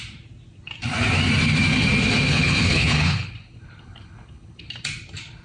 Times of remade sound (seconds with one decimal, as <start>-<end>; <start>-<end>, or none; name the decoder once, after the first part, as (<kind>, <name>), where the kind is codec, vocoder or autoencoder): 2.3-4.7 (codec, HILCodec)